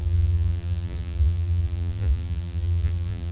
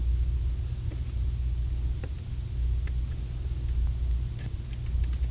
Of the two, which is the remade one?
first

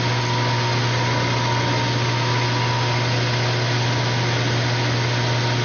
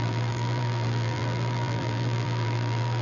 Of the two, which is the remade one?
second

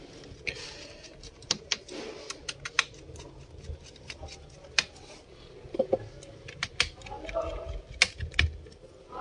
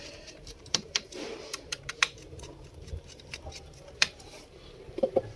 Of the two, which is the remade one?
second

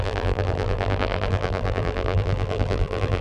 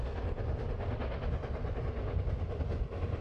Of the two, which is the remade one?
first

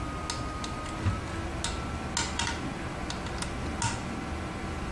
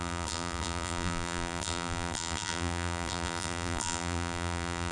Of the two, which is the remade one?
second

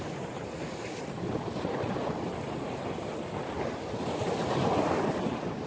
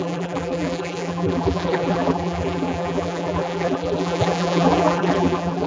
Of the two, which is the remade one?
second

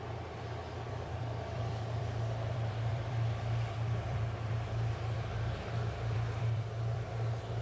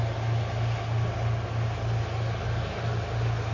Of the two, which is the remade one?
first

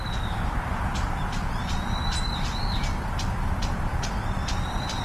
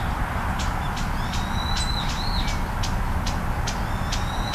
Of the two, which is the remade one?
first